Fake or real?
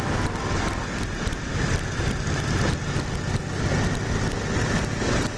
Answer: real